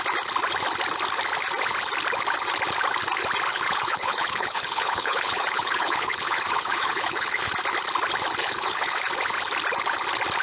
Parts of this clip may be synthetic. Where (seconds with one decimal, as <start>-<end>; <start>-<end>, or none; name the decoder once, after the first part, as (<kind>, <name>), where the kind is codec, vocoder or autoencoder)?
3.5-7.5 (codec, HILCodec); 8.4-9.0